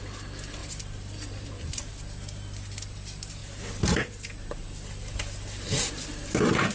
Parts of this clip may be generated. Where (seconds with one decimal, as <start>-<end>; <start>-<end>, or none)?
0.6-1.9